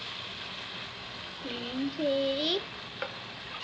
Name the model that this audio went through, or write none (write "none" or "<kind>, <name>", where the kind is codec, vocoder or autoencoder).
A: none